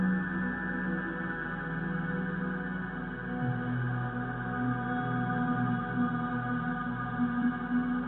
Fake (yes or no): no